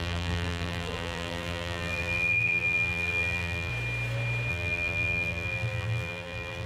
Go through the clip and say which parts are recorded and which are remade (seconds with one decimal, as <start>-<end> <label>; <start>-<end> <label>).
0.0-3.7 remade; 3.7-4.5 recorded; 4.5-6.7 remade